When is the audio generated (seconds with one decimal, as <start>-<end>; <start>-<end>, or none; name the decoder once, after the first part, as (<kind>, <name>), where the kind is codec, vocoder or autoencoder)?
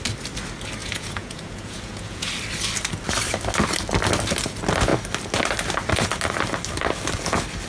0.8-2.3 (vocoder, Vocos)